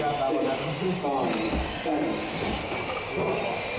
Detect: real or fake real